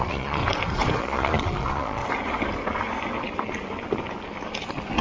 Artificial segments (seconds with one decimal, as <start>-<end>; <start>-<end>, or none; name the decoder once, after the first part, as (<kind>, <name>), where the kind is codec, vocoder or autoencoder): 0.0-0.4 (vocoder, Vocos); 1.0-2.0